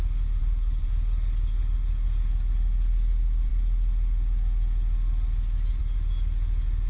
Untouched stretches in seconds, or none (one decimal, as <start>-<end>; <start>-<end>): 0.0-0.4; 0.9-6.9